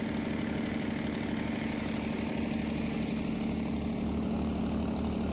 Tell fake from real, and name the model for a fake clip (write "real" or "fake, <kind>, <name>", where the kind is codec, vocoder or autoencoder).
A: real